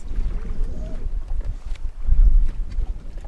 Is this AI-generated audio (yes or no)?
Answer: yes